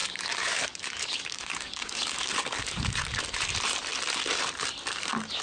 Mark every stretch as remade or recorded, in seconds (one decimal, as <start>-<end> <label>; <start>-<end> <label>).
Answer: 0.0-3.2 remade; 3.2-5.4 recorded